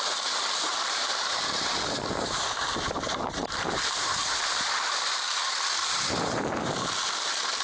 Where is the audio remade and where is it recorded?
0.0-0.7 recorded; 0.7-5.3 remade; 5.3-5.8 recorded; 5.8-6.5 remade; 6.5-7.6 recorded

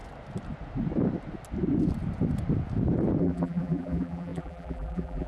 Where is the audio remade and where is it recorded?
0.0-3.2 recorded; 3.2-5.3 remade

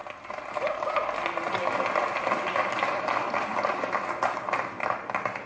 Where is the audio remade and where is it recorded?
0.0-3.3 recorded; 3.3-5.5 remade

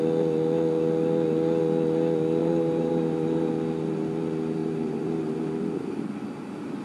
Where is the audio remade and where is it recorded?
0.0-2.4 recorded; 2.4-3.5 remade; 3.5-4.6 recorded; 4.6-5.9 remade; 5.9-6.8 recorded

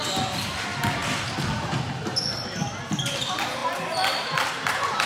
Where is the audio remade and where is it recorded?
0.0-0.7 recorded; 0.7-2.6 remade; 2.6-5.1 recorded